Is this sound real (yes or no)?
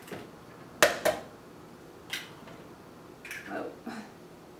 yes